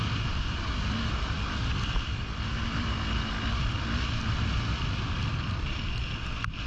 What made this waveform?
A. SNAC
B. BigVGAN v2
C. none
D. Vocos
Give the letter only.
C